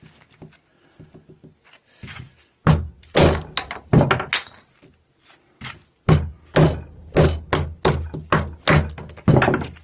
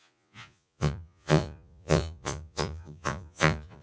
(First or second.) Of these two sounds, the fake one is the second